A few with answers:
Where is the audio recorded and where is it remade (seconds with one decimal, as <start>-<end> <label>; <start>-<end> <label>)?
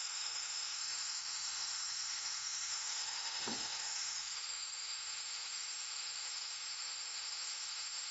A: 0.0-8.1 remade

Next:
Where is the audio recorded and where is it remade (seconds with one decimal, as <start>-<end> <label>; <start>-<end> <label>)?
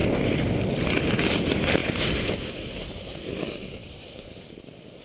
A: 0.0-5.0 recorded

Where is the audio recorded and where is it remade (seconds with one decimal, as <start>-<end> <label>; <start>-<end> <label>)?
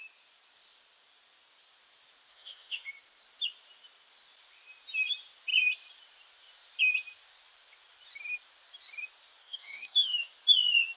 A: 0.0-2.3 recorded; 2.3-2.9 remade; 2.9-9.4 recorded; 9.4-10.3 remade; 10.3-11.0 recorded